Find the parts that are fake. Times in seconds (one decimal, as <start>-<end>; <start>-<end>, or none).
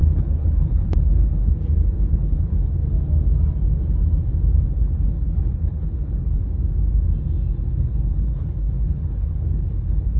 0.0-2.8; 4.7-6.4; 7.7-10.2